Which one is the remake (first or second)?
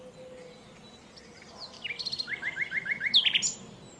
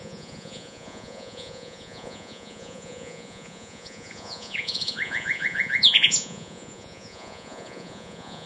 second